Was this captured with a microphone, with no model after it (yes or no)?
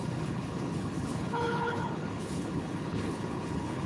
no